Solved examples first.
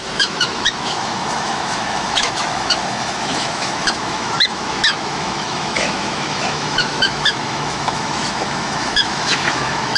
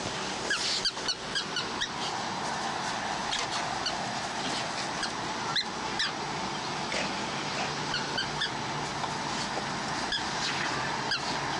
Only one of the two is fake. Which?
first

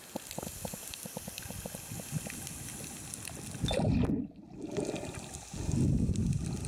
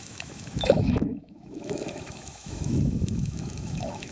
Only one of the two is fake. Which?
second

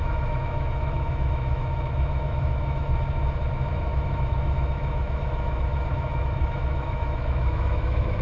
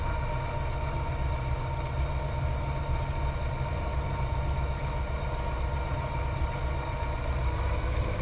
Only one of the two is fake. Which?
first